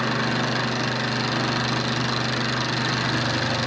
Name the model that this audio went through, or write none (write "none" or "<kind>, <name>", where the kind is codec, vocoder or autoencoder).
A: none